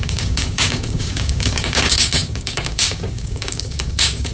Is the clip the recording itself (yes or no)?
no